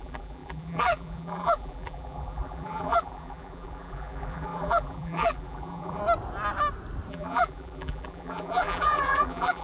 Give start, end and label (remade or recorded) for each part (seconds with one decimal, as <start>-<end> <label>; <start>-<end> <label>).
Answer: 0.0-6.0 remade; 6.0-7.1 recorded; 7.1-9.6 remade